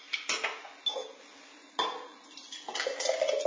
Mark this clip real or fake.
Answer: real